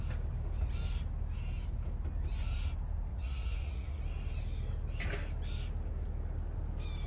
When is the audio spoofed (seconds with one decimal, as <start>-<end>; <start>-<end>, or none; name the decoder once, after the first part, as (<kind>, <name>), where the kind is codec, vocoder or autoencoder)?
3.1-4.0 (vocoder, Vocos)